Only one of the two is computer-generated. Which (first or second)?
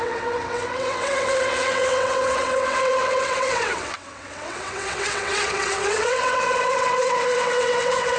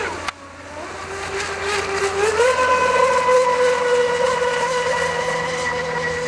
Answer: first